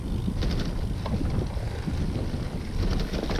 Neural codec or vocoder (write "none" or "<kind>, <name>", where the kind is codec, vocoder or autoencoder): none